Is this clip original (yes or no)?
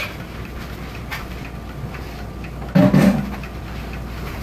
yes